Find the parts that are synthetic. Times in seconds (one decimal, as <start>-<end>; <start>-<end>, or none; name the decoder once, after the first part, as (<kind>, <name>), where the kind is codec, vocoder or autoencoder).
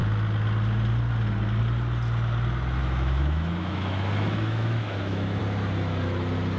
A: 2.8-5.4 (autoencoder, DAC-VAE)